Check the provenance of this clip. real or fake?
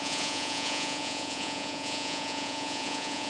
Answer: fake